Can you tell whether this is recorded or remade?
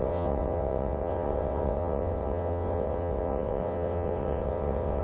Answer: remade